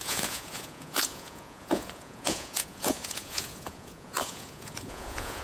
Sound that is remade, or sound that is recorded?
remade